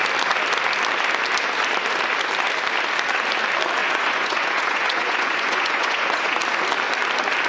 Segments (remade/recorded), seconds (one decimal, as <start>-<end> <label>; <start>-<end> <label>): 0.0-3.8 recorded; 3.8-6.4 remade; 6.4-7.5 recorded